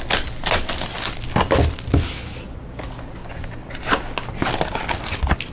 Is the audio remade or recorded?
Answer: recorded